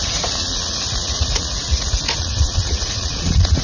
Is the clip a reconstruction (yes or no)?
yes